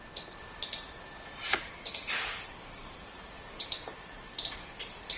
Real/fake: real